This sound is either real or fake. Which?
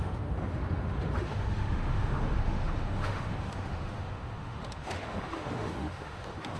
fake